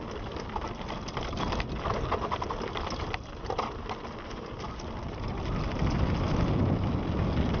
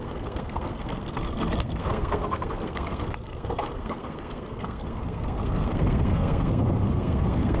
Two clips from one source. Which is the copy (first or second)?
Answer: second